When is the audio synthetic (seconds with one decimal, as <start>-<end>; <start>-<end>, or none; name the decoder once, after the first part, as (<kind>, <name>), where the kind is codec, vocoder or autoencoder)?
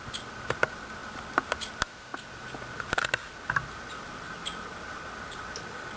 none